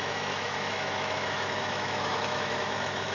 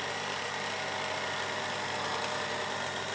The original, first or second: second